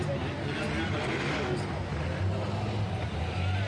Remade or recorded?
recorded